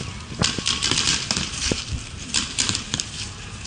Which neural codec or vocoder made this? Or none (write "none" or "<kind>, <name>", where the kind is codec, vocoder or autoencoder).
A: none